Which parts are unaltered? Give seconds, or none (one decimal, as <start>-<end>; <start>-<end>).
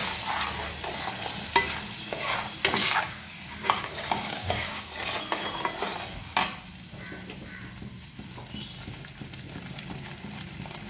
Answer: 0.0-2.8; 4.9-10.9